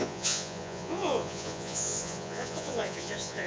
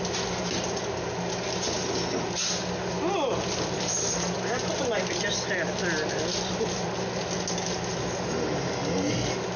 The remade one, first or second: first